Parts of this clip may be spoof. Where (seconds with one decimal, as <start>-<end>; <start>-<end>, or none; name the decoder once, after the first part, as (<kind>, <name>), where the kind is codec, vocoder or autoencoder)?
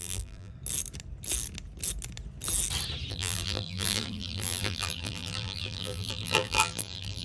0.0-0.5 (vocoder, BigVGAN v2); 3.1-7.2